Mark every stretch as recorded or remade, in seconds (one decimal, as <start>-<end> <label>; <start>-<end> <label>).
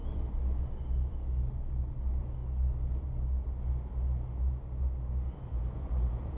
0.0-5.5 recorded; 5.5-6.4 remade